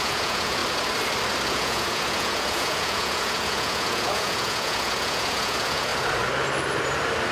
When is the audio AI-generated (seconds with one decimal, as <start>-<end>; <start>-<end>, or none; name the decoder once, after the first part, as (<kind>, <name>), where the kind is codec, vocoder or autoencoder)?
0.0-0.6 (vocoder, Vocos); 1.5-5.9